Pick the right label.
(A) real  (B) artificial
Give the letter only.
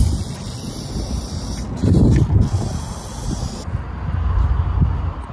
A